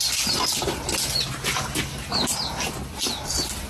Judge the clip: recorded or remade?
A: recorded